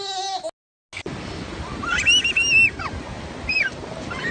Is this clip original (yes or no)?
yes